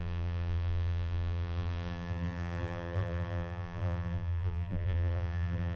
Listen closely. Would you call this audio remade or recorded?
remade